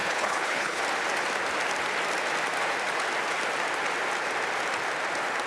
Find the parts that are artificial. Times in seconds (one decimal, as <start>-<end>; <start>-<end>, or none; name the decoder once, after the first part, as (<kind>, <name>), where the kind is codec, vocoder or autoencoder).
0.0-0.8 (codec, HILCodec)